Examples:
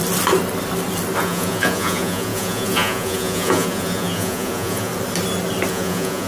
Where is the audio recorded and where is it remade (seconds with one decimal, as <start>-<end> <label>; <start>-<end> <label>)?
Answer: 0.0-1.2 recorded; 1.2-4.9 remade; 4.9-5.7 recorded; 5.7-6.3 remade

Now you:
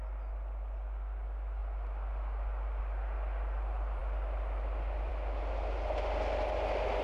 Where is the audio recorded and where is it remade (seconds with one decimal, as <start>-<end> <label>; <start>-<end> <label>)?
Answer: 0.0-7.0 recorded

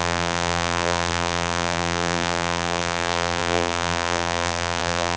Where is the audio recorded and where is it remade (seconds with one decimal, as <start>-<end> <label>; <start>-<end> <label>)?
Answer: 0.0-5.2 remade

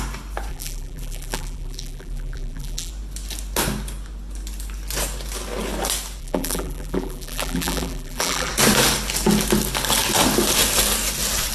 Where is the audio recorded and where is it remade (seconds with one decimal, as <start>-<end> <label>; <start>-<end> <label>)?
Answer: 0.0-0.5 recorded; 0.5-2.9 remade; 2.9-6.2 recorded; 6.2-8.5 remade; 8.5-11.5 recorded